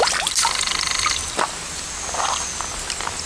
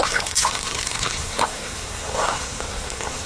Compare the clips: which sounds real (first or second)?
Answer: first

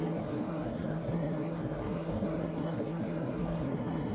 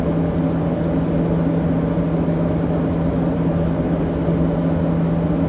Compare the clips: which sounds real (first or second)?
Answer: second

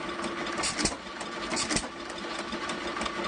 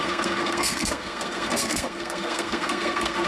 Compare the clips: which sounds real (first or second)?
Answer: first